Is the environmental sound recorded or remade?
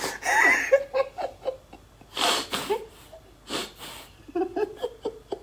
recorded